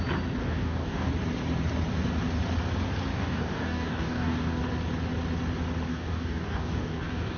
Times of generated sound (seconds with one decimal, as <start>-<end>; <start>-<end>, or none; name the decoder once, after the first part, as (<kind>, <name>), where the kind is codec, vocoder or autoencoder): 0.4-1.1 (codec, DAC); 3.1-4.6; 5.9-7.4